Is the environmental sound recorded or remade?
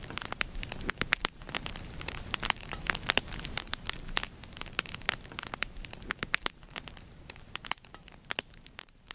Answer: remade